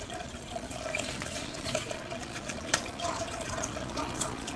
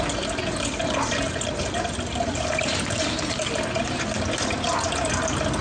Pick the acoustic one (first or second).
second